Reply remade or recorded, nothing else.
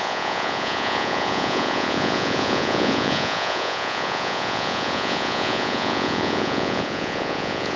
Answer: remade